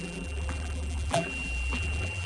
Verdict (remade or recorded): remade